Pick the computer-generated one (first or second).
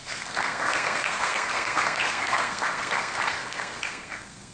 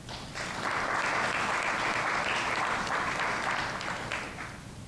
first